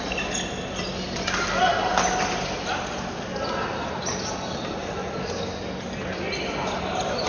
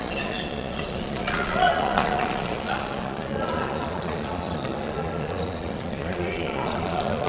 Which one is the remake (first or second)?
second